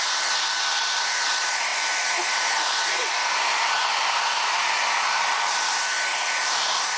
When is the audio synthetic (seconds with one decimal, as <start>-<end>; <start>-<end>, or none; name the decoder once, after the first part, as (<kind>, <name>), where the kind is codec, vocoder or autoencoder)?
none